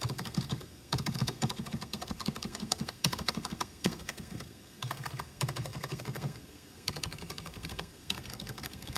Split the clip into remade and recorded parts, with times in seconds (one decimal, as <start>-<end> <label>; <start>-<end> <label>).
0.0-9.0 remade